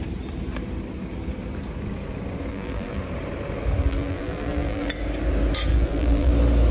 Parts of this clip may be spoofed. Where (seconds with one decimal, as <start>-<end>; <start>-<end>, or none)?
2.5-3.0; 3.8-4.9; 5.7-6.3